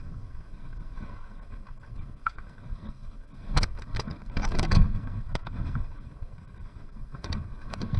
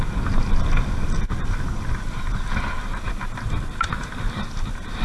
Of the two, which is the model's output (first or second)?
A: first